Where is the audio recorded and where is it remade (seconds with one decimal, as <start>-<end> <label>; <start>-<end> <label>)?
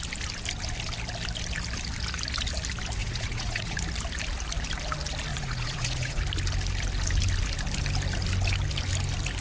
0.0-3.0 recorded; 3.0-3.8 remade; 3.8-5.3 recorded; 5.3-6.2 remade; 6.2-9.4 recorded